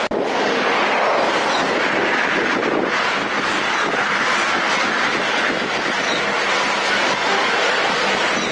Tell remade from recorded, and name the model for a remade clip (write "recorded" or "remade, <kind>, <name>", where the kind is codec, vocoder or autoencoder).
recorded